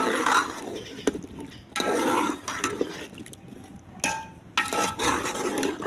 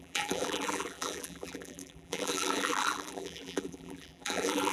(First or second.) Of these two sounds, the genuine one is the first